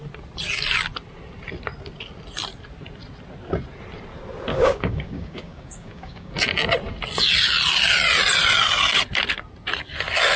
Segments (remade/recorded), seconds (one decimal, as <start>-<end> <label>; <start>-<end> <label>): 0.0-4.5 recorded; 4.5-6.3 remade; 6.3-10.4 recorded